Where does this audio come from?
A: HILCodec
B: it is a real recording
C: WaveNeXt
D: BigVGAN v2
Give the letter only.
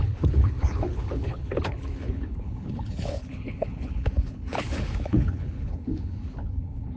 A